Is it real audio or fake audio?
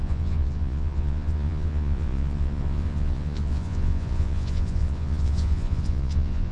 fake